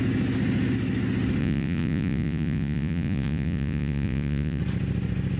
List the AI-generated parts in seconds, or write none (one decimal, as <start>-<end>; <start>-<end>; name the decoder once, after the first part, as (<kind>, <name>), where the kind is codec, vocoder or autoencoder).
1.4-4.6 (vocoder, Vocos)